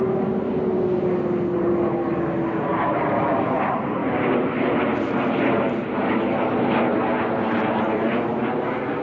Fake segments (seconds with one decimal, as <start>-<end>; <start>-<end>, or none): 2.7-3.4